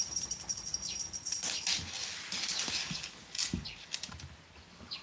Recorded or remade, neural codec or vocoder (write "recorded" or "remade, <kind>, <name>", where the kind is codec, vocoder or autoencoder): recorded